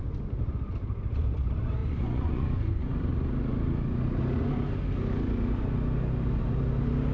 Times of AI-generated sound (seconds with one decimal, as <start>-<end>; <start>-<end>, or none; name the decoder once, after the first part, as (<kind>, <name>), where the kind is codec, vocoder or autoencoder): 1.8-2.9 (vocoder, Vocos)